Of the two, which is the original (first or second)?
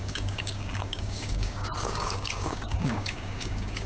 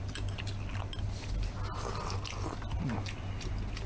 second